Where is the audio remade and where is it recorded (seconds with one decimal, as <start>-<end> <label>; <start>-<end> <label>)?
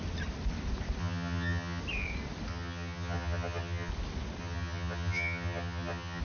0.0-1.0 recorded; 1.0-1.8 remade; 1.8-2.5 recorded; 2.5-3.9 remade; 3.9-4.4 recorded; 4.4-6.2 remade